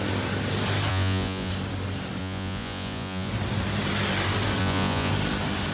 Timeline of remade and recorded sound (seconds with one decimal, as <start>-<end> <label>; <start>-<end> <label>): 0.0-0.9 recorded; 0.9-1.5 remade; 1.5-2.2 recorded; 2.2-3.3 remade; 3.3-4.6 recorded; 4.6-5.1 remade; 5.1-5.7 recorded